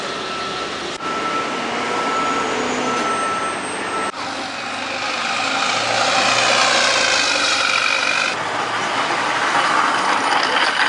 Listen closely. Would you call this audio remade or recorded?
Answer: recorded